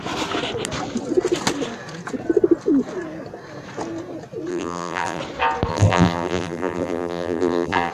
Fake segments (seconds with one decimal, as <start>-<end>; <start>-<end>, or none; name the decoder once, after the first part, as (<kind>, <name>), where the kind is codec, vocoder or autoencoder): 4.5-5.2 (vocoder, BigVGAN v2); 5.7-7.9